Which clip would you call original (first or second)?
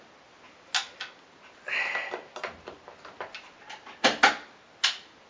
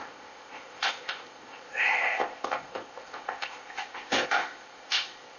first